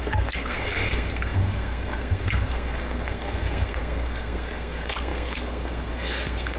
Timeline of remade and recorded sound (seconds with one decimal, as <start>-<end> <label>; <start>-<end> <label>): 0.0-6.6 remade